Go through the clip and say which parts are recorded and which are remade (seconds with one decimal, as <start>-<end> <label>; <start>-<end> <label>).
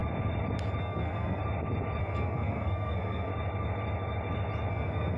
0.0-0.8 recorded; 0.8-1.4 remade; 1.4-2.0 recorded; 2.0-3.3 remade; 3.3-4.7 recorded; 4.7-5.2 remade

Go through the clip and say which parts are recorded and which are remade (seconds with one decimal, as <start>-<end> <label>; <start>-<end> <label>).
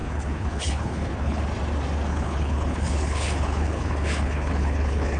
0.0-1.4 remade; 1.4-2.1 recorded; 2.1-5.2 remade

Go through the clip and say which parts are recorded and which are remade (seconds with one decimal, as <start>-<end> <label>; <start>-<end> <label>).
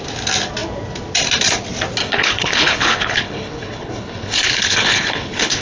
0.0-2.0 recorded; 2.0-5.6 remade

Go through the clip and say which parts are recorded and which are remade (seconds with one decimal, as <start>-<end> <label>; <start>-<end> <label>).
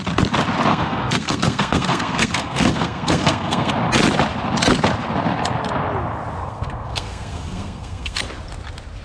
0.0-0.7 recorded; 0.7-3.7 remade; 3.7-6.4 recorded; 6.4-8.2 remade; 8.2-9.0 recorded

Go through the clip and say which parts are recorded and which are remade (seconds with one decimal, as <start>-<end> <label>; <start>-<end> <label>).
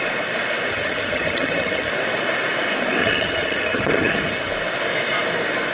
0.0-0.7 recorded; 0.7-1.9 remade; 1.9-3.0 recorded; 3.0-4.5 remade; 4.5-5.7 recorded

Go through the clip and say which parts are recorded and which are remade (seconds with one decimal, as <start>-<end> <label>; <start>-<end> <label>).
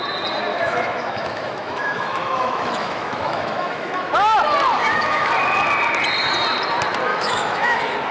0.0-0.5 recorded; 0.5-4.1 remade; 4.1-4.8 recorded; 4.8-5.3 remade; 5.3-7.1 recorded; 7.1-8.1 remade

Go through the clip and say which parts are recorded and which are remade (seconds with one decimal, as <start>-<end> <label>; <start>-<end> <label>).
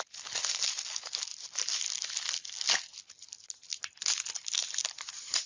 0.0-1.3 recorded; 1.3-3.1 remade; 3.1-5.5 recorded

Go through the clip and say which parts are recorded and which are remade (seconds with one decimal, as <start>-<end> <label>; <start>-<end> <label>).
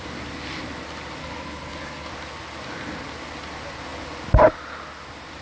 0.0-1.2 recorded; 1.2-2.1 remade; 2.1-5.4 recorded